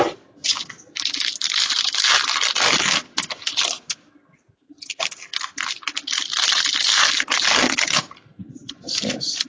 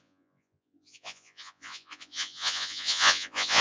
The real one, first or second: first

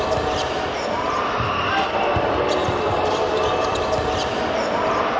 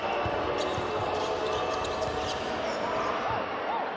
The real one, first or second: second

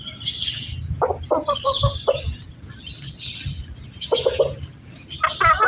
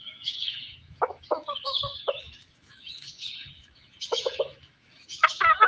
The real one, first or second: first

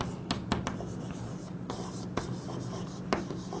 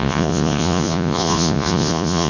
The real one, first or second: first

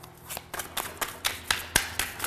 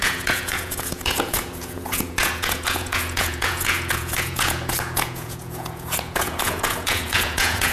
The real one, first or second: first